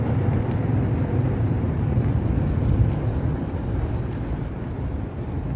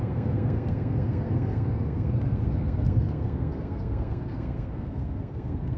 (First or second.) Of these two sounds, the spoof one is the second